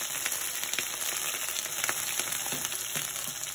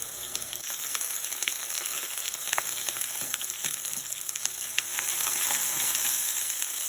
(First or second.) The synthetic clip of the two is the second